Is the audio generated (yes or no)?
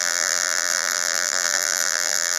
yes